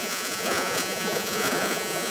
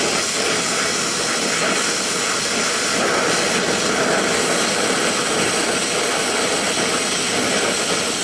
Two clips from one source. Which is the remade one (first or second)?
first